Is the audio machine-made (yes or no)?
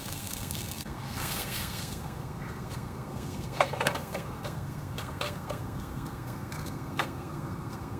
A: yes